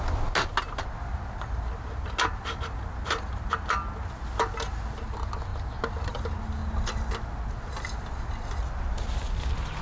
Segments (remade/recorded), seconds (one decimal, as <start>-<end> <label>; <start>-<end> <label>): 0.0-9.8 recorded